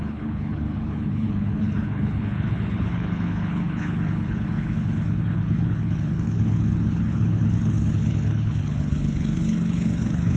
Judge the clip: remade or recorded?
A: remade